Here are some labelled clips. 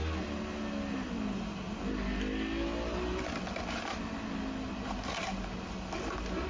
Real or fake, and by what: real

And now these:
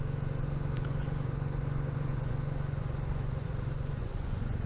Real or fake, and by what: fake, vocoder, Vocos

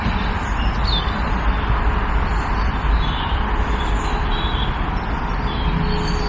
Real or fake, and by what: real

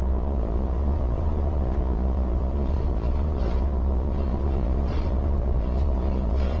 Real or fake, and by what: fake, vocoder, Vocos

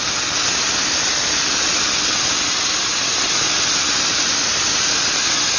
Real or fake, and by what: real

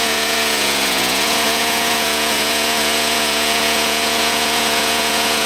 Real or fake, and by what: fake, vocoder, Vocos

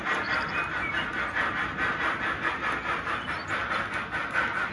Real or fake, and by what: real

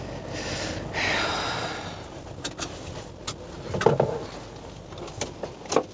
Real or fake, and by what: real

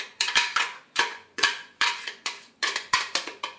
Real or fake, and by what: fake, vocoder, Vocos